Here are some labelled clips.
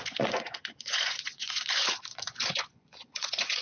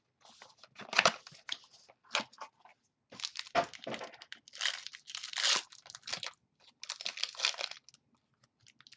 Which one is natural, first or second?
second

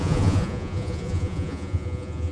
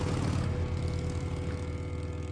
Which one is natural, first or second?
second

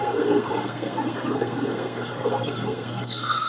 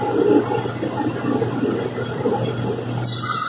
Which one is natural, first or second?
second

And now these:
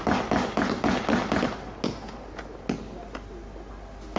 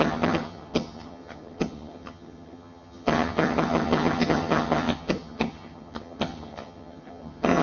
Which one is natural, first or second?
first